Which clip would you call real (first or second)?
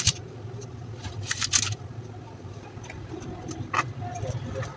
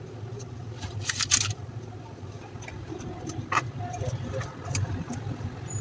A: first